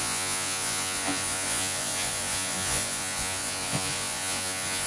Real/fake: fake